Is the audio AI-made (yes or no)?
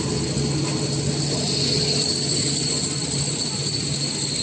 no